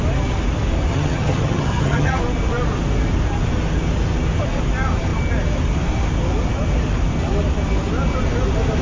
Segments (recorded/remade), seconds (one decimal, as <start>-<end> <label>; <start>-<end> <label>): 0.0-0.9 recorded; 0.9-2.2 remade; 2.2-8.8 recorded